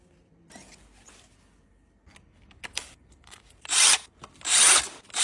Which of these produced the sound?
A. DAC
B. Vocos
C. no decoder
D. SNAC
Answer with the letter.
C